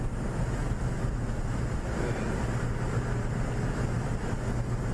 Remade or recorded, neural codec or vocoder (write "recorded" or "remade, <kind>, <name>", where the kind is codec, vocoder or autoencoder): recorded